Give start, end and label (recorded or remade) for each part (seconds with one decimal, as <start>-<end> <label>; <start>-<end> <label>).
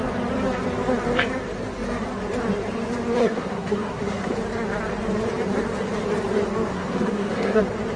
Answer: 0.0-3.2 recorded; 3.2-4.4 remade; 4.4-6.7 recorded; 6.7-7.6 remade; 7.6-8.0 recorded